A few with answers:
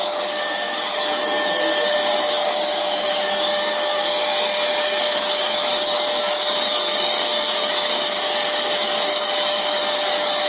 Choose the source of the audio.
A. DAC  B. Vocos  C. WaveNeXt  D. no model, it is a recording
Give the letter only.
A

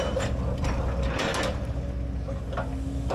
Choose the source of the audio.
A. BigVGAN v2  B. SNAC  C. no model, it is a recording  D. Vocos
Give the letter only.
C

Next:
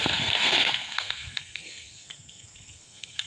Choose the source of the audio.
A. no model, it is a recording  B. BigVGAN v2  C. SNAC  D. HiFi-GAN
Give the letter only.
C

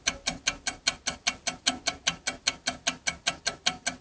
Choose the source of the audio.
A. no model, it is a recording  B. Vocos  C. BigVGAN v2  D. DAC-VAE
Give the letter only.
A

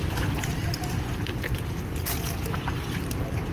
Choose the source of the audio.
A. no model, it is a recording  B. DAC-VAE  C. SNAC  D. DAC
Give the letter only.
A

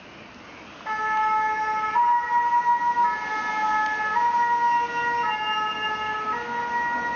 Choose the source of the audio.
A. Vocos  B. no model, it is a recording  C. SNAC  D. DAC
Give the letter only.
B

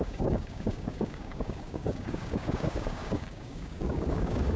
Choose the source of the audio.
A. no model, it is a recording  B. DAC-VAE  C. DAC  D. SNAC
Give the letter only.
C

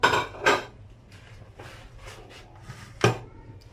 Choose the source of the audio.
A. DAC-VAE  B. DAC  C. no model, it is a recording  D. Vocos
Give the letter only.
C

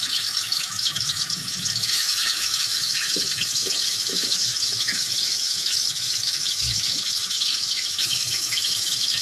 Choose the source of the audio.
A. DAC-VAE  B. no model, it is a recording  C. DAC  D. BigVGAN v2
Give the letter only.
A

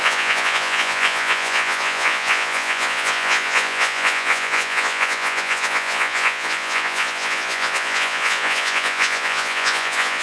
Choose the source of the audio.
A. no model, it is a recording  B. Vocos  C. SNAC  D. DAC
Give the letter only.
B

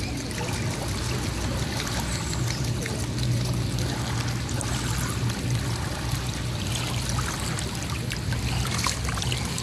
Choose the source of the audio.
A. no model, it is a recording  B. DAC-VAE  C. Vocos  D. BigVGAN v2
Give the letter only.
A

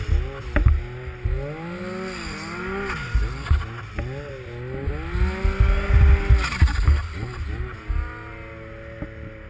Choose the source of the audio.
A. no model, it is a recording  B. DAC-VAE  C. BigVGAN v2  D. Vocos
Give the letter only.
A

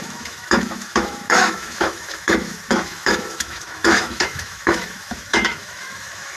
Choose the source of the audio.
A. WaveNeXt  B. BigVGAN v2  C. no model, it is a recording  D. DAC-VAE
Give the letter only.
D